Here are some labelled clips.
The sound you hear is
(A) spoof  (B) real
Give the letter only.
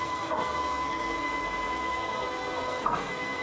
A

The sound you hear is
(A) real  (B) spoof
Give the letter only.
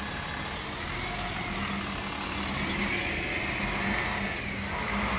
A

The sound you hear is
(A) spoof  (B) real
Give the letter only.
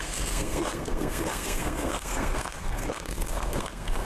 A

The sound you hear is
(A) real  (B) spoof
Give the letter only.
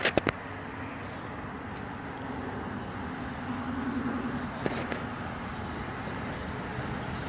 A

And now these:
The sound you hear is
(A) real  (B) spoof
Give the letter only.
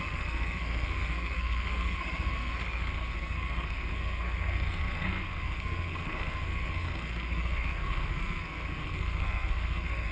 B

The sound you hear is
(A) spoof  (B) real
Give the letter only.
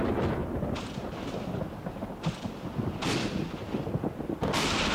B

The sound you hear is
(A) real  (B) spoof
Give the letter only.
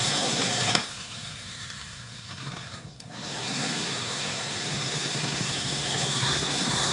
B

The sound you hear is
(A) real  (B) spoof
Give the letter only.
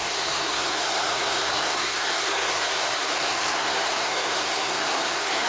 B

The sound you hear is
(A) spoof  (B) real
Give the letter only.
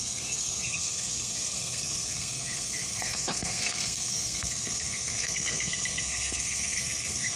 A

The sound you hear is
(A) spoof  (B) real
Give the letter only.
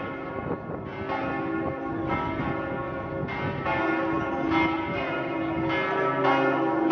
B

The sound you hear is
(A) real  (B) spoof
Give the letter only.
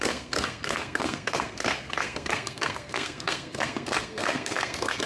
B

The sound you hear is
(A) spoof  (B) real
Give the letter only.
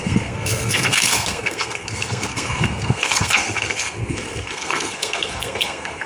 A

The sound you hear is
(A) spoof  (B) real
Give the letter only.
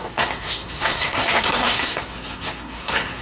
A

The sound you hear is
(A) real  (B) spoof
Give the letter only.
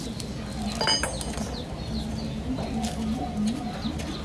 A